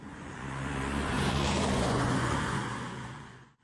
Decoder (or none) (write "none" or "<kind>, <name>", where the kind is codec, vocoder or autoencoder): vocoder, Vocos